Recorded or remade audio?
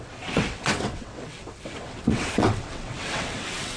remade